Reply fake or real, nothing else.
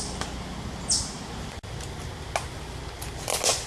real